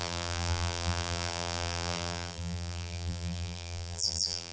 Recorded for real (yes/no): no